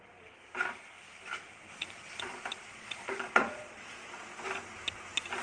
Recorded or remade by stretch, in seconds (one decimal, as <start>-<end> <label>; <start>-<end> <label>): 0.0-2.7 recorded; 2.7-4.1 remade; 4.1-5.4 recorded